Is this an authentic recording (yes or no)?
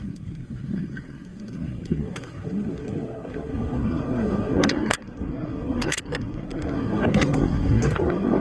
no